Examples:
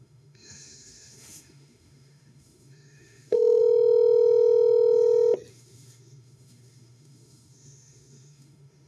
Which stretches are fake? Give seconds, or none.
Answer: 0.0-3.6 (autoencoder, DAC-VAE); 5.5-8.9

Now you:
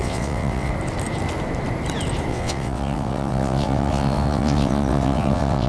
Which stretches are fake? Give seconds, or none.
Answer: 0.0-0.7 (vocoder, WaveNeXt); 2.3-5.7

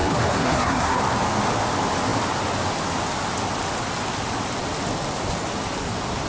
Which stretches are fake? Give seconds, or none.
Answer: 0.0-1.0 (codec, SNAC)

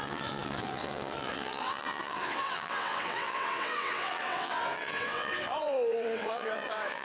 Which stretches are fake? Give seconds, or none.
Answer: 0.0-7.0 (vocoder, WaveNeXt)

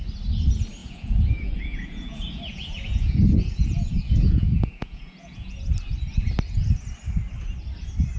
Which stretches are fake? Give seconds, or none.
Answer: 0.8-5.7 (vocoder, Vocos)